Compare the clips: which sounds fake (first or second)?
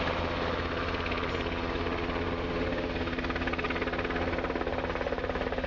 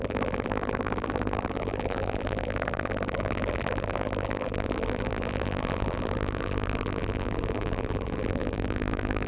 second